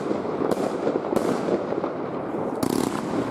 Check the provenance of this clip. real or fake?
real